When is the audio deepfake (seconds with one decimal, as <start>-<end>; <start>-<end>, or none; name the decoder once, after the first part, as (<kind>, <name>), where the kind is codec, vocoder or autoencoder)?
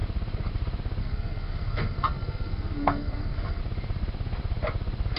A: 1.0-3.6 (codec, SNAC)